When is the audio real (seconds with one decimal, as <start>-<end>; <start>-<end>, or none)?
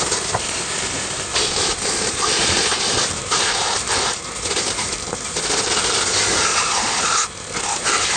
0.0-1.3; 2.6-6.5; 7.1-8.2